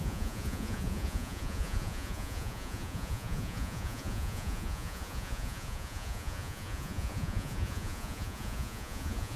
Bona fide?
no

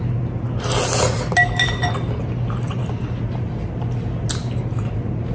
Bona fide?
yes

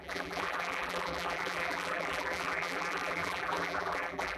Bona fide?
no